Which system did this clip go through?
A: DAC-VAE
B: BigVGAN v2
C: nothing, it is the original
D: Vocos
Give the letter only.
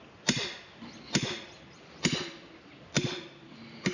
C